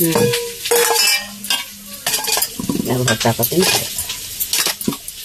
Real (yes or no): yes